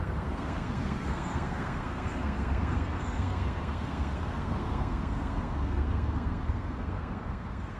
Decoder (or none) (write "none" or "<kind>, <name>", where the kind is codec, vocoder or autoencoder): codec, SNAC